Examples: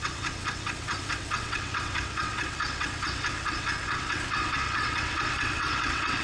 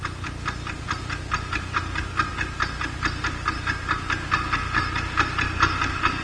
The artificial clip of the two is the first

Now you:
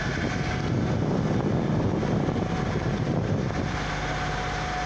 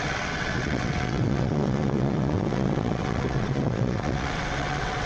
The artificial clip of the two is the second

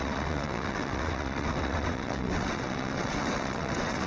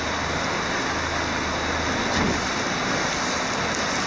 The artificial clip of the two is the first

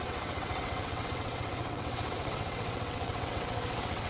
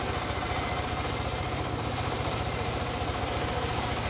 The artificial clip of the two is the first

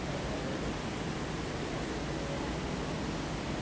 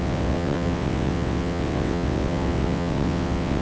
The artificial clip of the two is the second